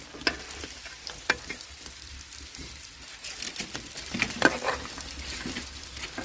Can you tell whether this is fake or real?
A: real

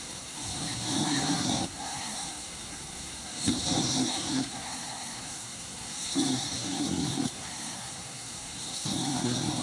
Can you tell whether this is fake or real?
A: fake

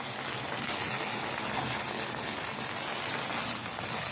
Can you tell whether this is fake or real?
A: real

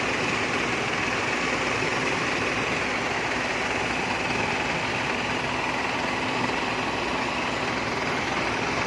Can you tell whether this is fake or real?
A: real